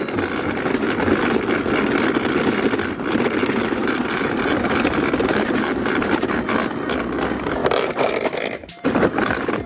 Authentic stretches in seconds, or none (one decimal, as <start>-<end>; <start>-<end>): 0.0-3.8; 4.5-5.3; 6.3-7.6; 8.1-8.6